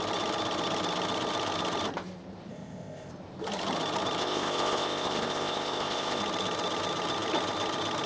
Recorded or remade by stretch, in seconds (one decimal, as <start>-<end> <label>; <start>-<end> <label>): 0.0-2.5 recorded; 2.5-3.1 remade; 3.1-4.2 recorded; 4.2-6.2 remade; 6.2-8.1 recorded